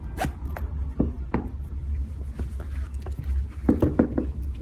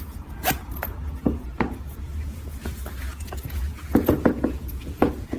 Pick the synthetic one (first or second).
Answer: second